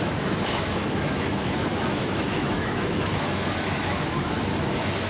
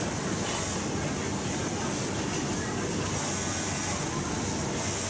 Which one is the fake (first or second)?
first